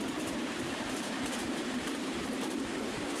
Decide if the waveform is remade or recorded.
remade